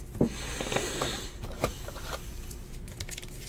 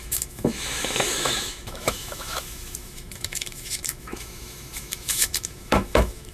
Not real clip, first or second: second